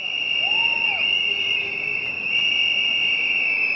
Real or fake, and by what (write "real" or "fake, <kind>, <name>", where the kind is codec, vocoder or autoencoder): real